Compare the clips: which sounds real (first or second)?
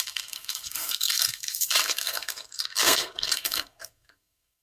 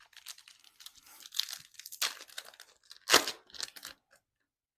second